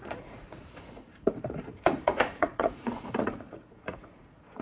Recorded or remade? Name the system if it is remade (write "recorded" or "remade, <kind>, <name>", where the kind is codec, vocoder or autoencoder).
remade, vocoder, Vocos